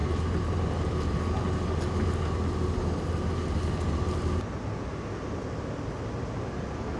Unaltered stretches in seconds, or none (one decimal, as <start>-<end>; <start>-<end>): 0.0-7.0